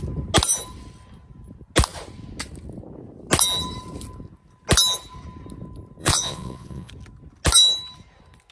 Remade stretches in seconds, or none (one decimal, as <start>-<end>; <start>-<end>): 6.0-6.9